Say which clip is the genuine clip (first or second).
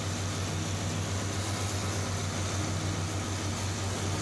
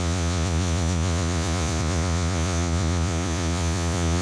first